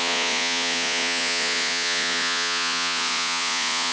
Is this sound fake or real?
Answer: fake